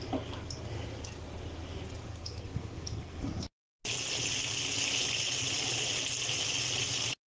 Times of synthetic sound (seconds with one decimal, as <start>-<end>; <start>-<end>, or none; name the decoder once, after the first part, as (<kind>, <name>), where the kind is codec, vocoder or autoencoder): 2.1-3.2 (codec, SNAC)